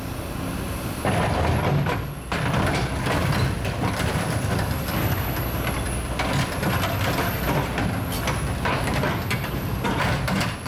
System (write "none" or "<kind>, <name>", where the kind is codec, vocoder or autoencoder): none